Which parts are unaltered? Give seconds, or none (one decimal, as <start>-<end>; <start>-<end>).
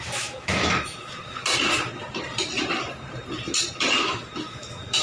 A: 1.4-4.0